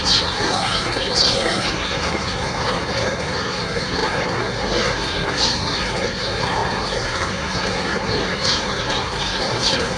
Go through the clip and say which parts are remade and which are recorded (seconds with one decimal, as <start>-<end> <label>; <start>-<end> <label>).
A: 0.0-10.0 remade